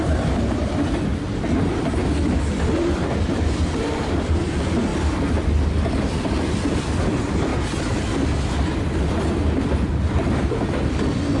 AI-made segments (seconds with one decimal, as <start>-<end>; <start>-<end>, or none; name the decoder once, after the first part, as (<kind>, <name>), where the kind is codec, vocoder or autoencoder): 0.0-1.1 (vocoder, BigVGAN v2); 1.8-4.9; 6.0-7.5; 9.3-11.4